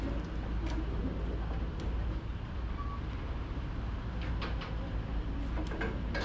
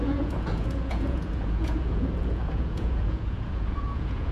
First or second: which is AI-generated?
second